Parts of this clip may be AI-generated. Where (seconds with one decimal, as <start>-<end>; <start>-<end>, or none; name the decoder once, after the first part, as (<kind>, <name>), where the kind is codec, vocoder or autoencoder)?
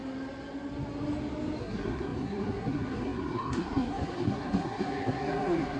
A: 1.6-5.8 (codec, SNAC)